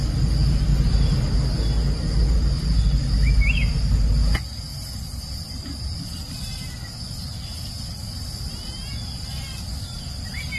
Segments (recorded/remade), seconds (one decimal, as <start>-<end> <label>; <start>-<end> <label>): 0.0-0.7 recorded; 0.7-1.3 remade; 1.3-4.7 recorded; 4.7-6.3 remade; 6.3-10.6 recorded